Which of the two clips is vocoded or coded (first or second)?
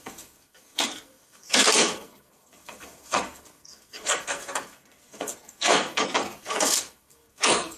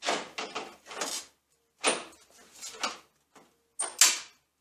first